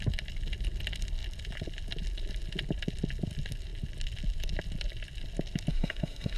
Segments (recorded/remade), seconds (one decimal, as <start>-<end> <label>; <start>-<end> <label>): 0.0-5.7 recorded; 5.7-6.4 remade

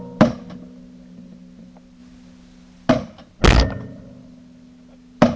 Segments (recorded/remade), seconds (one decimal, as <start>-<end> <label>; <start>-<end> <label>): 0.0-5.4 recorded

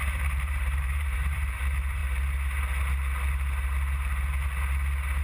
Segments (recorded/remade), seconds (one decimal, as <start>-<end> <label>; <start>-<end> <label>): 0.0-2.0 remade; 2.0-5.2 recorded

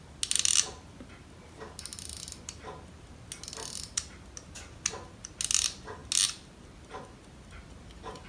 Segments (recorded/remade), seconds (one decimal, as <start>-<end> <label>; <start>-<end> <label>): 0.0-8.3 recorded